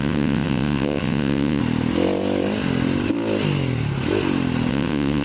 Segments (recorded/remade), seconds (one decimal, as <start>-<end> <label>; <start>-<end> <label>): 0.0-1.6 remade; 1.6-4.7 recorded; 4.7-5.2 remade